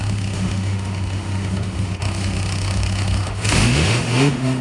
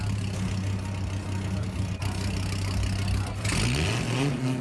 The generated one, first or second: first